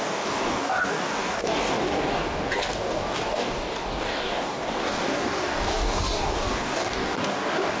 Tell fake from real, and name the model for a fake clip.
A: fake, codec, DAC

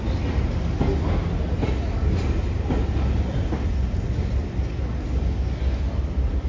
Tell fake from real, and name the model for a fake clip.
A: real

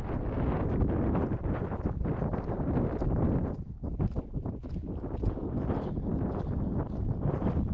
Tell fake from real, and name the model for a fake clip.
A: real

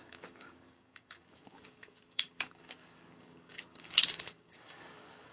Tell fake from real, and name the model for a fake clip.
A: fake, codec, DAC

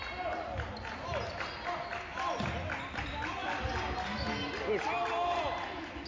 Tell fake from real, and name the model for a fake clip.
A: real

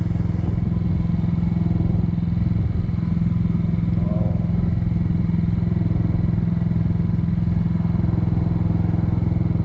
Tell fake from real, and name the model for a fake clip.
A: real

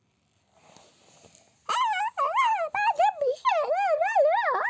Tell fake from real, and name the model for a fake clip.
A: real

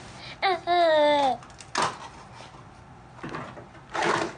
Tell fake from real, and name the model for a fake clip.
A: real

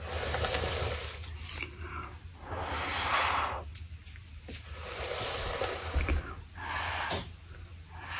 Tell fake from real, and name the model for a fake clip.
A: real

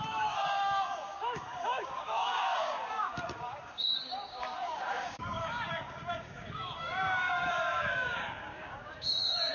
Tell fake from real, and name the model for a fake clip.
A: fake, codec, DAC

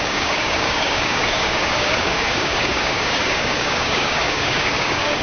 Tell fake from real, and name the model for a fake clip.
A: fake, codec, DAC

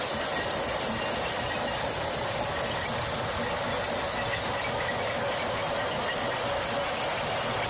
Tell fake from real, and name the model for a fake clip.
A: real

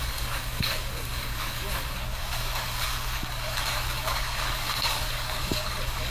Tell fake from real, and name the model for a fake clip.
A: fake, codec, DAC